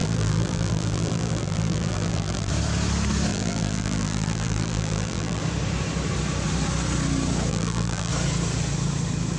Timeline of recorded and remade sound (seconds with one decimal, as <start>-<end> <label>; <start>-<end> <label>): 0.0-2.5 remade; 2.5-3.3 recorded; 3.3-5.4 remade; 5.4-7.5 recorded; 7.5-8.1 remade; 8.1-9.4 recorded